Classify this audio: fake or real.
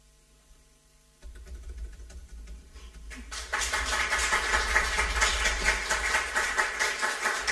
real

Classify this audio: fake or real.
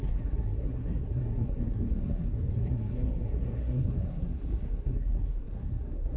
fake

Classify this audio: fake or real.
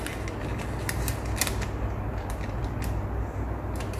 real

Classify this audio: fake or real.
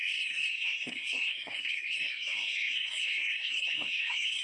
fake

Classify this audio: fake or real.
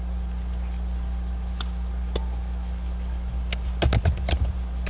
real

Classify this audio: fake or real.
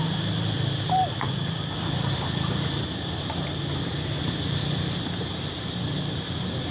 real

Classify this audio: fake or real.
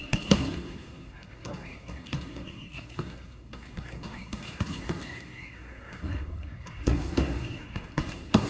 fake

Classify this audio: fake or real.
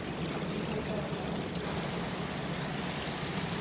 real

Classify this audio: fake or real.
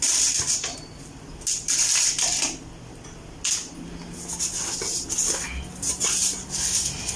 real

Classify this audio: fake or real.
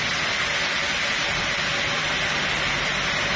real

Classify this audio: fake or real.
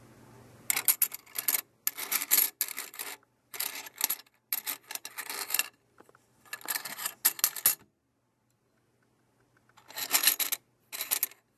real